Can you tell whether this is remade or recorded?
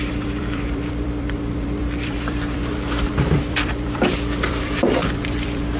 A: remade